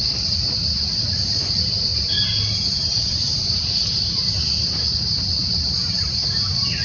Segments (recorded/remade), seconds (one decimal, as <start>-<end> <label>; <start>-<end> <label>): 0.0-6.8 remade